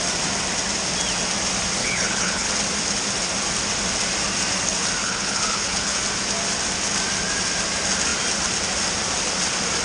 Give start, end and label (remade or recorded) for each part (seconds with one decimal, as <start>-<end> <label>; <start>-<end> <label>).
0.0-1.8 recorded; 1.8-2.5 remade; 2.5-5.0 recorded; 5.0-6.0 remade; 6.0-9.8 recorded